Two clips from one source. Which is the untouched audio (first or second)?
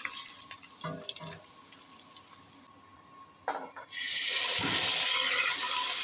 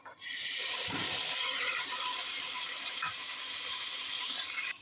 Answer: first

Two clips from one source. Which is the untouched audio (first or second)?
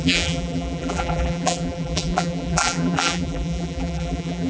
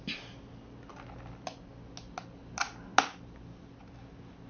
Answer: second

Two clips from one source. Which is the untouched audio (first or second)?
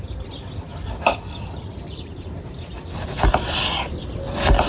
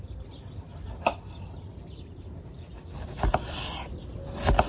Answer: second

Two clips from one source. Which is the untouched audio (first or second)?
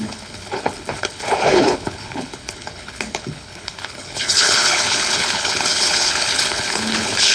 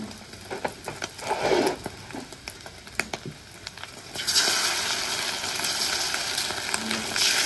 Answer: second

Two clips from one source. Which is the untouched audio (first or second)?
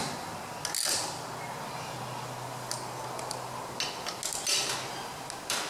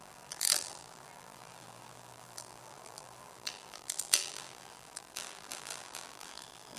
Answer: first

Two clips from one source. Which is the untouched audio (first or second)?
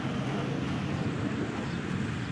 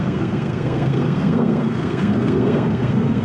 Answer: first